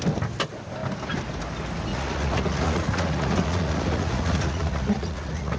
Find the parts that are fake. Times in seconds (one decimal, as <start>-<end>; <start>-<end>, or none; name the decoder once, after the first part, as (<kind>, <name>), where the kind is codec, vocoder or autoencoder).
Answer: 1.9-5.6 (vocoder, Vocos)